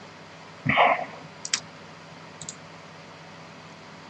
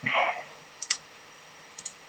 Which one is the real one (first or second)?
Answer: first